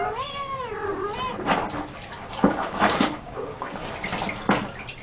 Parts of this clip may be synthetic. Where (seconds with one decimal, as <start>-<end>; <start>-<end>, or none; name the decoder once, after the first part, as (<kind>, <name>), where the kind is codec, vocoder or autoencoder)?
2.2-3.9 (codec, DAC)